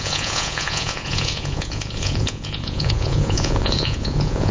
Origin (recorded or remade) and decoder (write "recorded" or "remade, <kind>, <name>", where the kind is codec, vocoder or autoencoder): remade, vocoder, Vocos